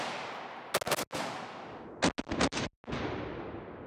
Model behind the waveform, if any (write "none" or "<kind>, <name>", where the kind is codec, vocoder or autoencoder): none